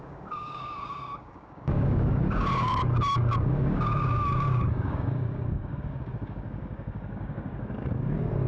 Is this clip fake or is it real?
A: fake